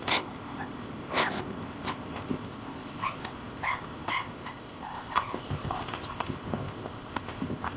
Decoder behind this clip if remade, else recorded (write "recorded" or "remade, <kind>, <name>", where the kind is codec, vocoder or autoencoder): remade, codec, ZipCodec